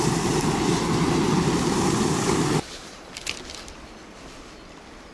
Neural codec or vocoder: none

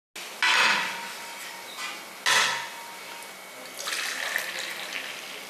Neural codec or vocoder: none